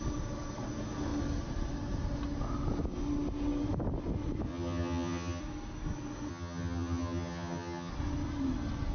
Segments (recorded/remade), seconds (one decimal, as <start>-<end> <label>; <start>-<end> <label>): 0.0-4.5 recorded; 4.5-5.4 remade; 5.4-6.3 recorded; 6.3-7.9 remade; 7.9-8.9 recorded